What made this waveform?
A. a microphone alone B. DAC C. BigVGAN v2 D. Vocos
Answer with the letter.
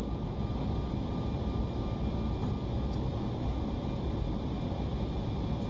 A